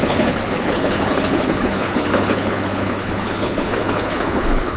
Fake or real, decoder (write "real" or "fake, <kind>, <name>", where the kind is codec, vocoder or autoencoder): fake, codec, HILCodec